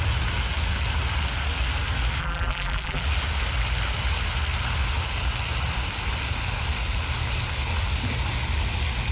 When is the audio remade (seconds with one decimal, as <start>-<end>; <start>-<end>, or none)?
2.2-3.0

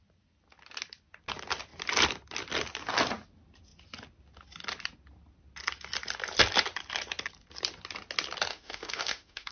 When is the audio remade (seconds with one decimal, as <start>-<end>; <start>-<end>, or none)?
8.5-9.5

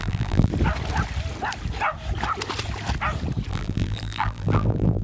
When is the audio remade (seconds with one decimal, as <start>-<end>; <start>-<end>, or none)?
0.0-0.5; 3.5-5.0

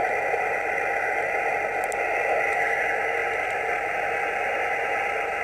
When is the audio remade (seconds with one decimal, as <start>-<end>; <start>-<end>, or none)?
none

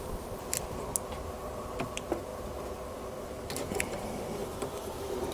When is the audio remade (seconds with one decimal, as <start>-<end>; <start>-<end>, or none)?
4.4-5.3

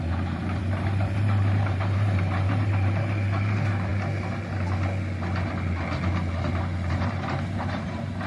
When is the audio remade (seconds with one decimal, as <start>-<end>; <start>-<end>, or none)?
0.0-3.9; 6.9-8.3

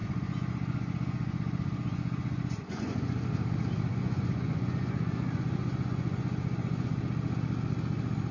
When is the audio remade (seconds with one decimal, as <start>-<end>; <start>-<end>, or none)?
0.0-3.3; 3.9-7.0